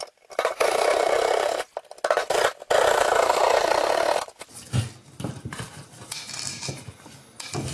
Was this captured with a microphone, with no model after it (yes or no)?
yes